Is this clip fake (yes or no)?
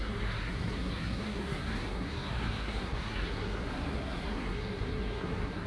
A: yes